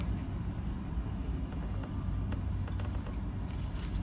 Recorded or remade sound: recorded